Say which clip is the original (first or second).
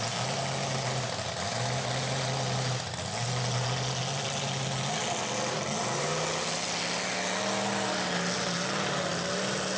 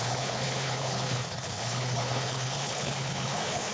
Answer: first